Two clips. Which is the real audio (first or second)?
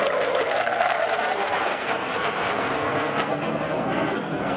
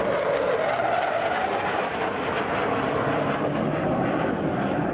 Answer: second